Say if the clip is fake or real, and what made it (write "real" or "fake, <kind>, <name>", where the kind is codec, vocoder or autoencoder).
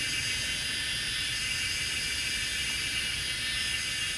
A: real